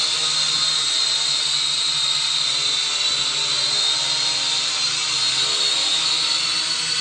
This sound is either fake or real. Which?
real